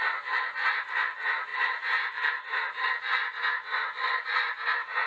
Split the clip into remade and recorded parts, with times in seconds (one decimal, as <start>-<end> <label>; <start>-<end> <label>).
0.0-1.5 recorded; 1.5-2.9 remade; 2.9-5.1 recorded